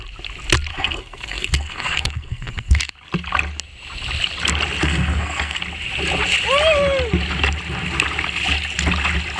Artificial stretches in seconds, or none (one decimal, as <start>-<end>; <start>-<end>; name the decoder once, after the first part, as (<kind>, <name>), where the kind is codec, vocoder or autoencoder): 0.7-2.9 (codec, SNAC); 4.8-5.6